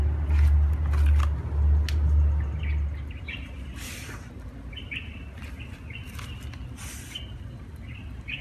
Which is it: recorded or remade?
recorded